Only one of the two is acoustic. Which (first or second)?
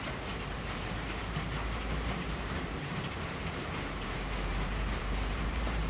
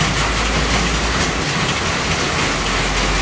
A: second